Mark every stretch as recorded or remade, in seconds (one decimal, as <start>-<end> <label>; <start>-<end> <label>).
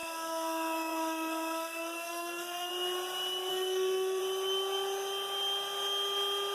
0.0-2.7 remade; 2.7-3.5 recorded; 3.5-4.2 remade; 4.2-6.5 recorded